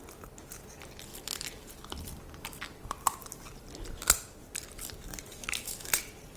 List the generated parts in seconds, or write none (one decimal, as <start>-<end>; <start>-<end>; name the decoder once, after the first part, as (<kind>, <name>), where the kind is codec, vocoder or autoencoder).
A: 5.3-6.0 (autoencoder, DAC-VAE)